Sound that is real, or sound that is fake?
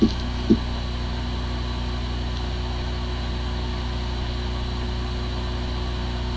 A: real